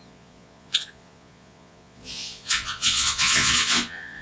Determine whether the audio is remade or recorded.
remade